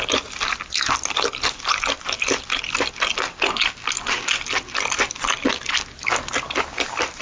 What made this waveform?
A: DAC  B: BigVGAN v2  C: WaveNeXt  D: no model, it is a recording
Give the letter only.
D